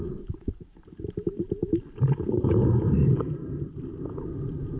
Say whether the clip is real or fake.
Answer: real